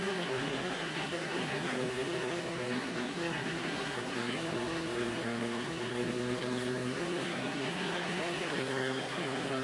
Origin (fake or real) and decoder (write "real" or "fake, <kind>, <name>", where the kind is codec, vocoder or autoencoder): fake, codec, SNAC